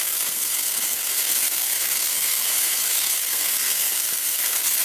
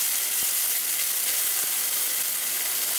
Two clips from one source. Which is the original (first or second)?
second